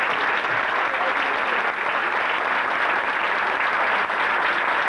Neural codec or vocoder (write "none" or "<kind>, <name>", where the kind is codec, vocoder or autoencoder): none